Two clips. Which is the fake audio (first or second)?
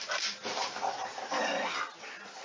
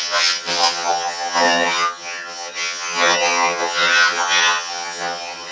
second